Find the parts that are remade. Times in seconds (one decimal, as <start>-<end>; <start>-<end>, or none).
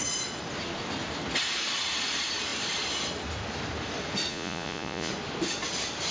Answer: 4.3-5.1